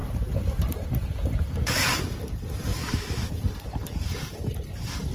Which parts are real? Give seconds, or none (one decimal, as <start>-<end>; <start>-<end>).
0.0-2.7; 3.3-5.1